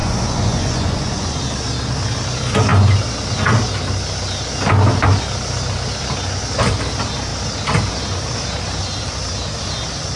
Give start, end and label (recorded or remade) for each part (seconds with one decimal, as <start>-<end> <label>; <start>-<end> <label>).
0.0-1.4 remade; 1.4-10.2 recorded